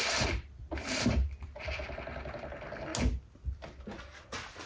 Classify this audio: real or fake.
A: real